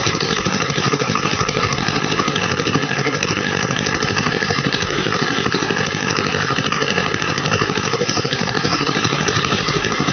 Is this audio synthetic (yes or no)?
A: yes